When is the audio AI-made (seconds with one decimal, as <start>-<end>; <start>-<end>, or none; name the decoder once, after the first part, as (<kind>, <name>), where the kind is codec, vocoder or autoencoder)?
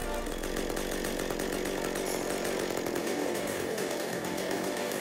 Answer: 3.0-5.0 (codec, DAC)